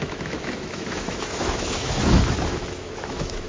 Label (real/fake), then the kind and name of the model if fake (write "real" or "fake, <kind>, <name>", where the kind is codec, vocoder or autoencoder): fake, autoencoder, DAC-VAE